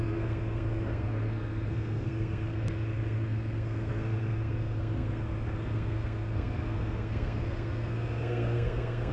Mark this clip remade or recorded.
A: remade